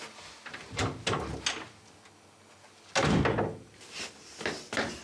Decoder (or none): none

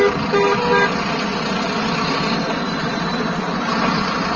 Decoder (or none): none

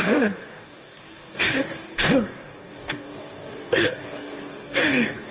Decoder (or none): codec, DAC